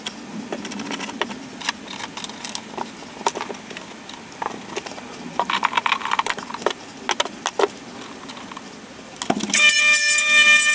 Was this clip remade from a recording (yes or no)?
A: no